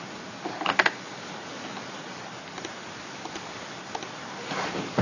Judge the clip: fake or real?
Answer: real